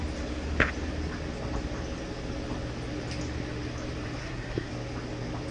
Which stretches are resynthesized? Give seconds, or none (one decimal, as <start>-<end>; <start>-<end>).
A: 4.2-4.7